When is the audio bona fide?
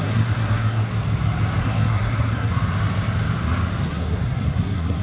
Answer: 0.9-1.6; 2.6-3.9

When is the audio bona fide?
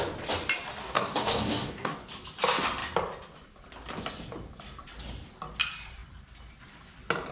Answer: 0.0-0.8; 2.1-7.3